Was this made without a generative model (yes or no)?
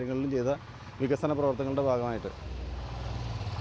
yes